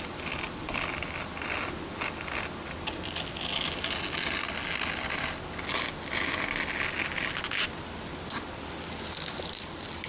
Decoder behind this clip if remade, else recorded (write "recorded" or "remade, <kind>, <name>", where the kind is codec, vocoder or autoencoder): recorded